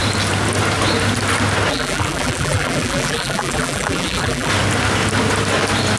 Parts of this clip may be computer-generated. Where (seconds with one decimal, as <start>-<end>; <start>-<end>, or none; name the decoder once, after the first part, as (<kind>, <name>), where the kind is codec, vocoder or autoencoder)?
1.7-4.5 (vocoder, BigVGAN v2)